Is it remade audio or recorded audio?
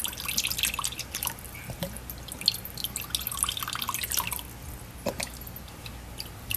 recorded